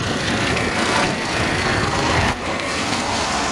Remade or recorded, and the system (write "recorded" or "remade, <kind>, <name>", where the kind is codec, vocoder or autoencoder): remade, codec, SNAC